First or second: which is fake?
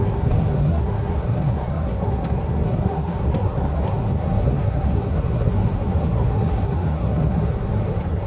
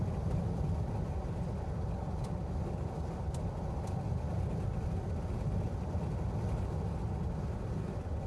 first